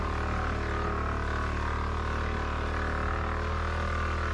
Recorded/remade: recorded